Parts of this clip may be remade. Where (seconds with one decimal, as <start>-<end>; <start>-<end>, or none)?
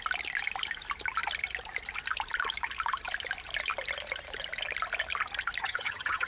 5.6-6.3